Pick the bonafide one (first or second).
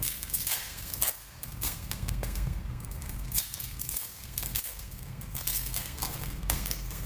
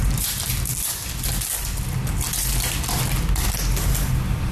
second